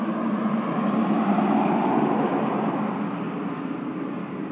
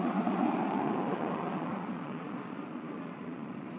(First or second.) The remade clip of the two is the second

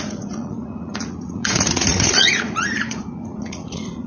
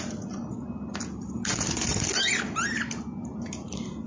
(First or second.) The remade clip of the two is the first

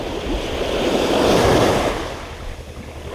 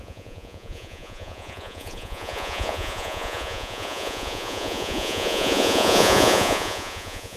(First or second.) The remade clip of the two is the second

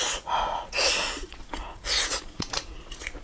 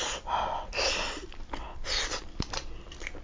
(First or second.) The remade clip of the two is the first